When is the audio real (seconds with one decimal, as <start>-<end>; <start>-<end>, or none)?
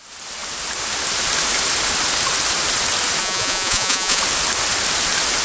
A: 0.0-3.2; 4.2-5.4